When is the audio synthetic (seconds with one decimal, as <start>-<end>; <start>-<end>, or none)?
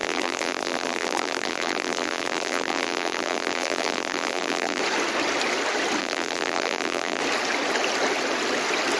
0.0-4.8; 6.0-7.2